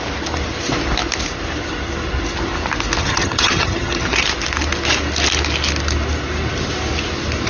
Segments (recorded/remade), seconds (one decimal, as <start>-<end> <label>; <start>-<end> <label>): 0.0-3.0 recorded; 3.0-4.1 remade; 4.1-7.5 recorded